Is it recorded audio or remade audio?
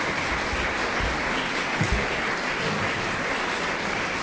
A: recorded